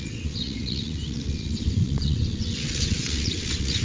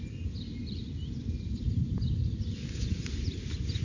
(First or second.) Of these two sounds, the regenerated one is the first